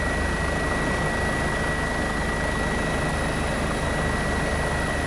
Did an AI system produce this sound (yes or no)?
no